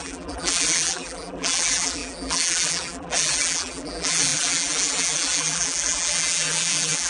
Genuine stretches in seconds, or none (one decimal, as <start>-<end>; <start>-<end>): none